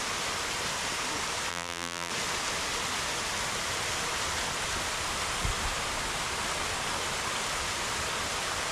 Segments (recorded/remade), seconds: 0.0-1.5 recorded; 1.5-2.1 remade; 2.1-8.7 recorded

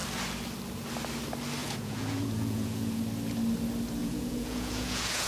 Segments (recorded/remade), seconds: 0.0-1.6 recorded; 1.6-3.0 remade; 3.0-4.0 recorded; 4.0-5.3 remade